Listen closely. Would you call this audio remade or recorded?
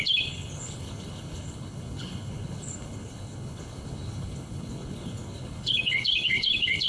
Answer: remade